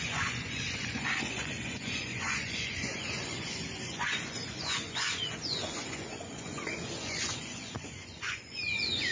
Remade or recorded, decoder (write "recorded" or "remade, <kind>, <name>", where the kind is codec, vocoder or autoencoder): remade, vocoder, Vocos